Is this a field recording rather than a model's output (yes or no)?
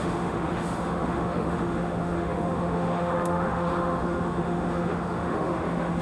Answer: no